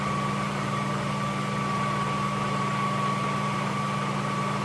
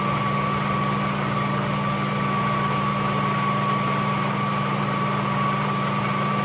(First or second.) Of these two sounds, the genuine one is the second